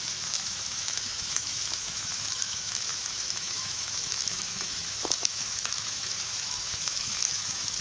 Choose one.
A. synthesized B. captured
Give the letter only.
A